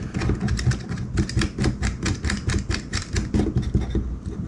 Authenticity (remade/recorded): recorded